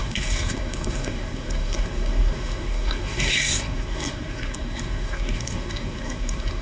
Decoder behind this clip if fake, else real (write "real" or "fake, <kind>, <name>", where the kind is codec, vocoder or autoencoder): fake, codec, SNAC